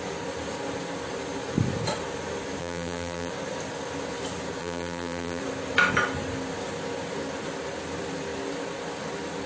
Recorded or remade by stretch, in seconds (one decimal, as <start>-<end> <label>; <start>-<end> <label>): 0.0-2.6 recorded; 2.6-3.3 remade; 3.3-4.6 recorded; 4.6-5.4 remade; 5.4-9.5 recorded